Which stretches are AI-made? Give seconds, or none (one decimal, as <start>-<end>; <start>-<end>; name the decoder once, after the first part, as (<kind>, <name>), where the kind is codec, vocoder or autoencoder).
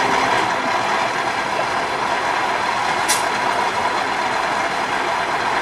none